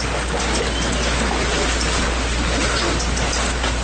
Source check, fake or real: real